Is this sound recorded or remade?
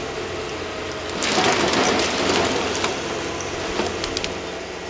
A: recorded